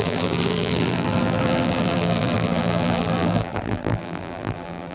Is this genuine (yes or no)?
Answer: no